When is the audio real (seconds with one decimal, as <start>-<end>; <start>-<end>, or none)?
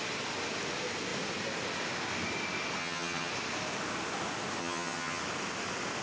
0.0-2.8; 3.3-4.6; 5.2-6.0